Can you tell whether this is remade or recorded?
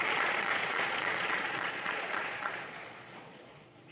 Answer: remade